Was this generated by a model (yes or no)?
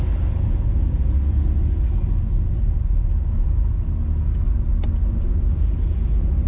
no